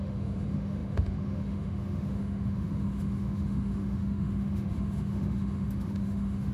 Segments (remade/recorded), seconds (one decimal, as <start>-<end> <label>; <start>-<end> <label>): 0.0-6.5 remade